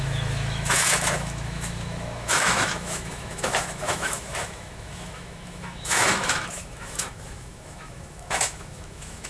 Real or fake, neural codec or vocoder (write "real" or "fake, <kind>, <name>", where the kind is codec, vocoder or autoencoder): fake, autoencoder, DAC-VAE